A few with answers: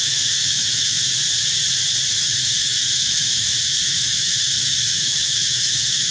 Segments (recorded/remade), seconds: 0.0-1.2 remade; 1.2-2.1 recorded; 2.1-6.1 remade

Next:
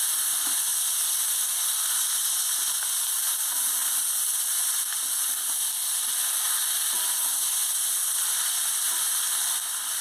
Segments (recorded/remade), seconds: 0.0-10.0 recorded

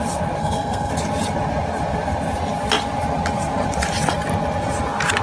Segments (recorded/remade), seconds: 0.0-0.4 recorded; 0.4-0.9 remade; 0.9-5.2 recorded